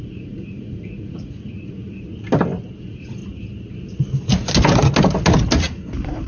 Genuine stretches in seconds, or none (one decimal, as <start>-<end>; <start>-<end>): 2.1-2.8; 3.2-5.6